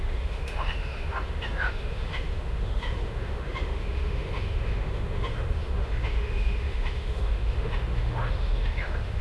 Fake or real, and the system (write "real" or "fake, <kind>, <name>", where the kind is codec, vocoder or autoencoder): fake, autoencoder, DAC-VAE